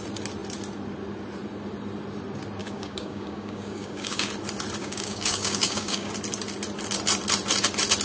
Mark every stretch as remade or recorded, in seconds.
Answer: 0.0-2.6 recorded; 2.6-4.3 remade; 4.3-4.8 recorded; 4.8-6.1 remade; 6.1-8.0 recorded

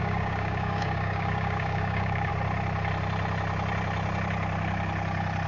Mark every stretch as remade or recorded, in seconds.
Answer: 0.0-2.3 remade; 2.3-5.5 recorded

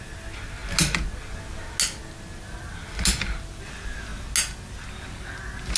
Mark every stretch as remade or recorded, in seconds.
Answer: 0.0-5.8 recorded

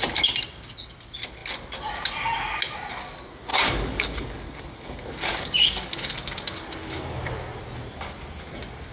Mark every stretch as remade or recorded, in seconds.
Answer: 0.0-3.5 recorded; 3.5-7.1 remade; 7.1-8.9 recorded

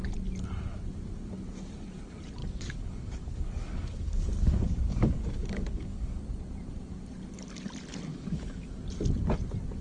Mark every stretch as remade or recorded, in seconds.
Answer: 0.0-2.4 recorded; 2.4-6.2 remade; 6.2-8.1 recorded; 8.1-8.8 remade; 8.8-9.8 recorded